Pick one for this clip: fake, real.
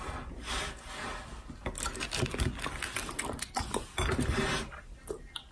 real